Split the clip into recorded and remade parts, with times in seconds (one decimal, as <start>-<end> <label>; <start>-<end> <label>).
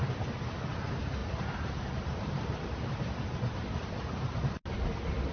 0.0-1.2 recorded; 1.2-3.2 remade; 3.2-5.3 recorded